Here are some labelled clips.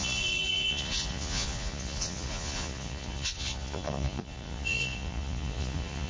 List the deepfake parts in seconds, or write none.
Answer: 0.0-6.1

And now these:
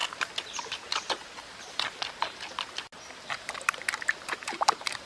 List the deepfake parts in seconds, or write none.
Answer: none

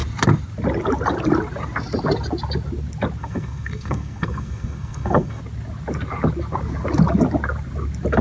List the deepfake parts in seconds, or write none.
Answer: 3.2-5.4

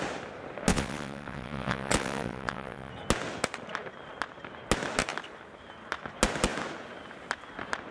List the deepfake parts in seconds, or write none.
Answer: 0.7-2.9